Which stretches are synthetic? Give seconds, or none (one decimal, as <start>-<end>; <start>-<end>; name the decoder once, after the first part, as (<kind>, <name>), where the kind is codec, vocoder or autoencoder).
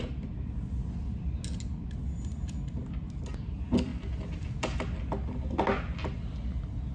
none